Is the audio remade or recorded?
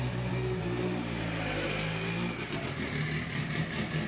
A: recorded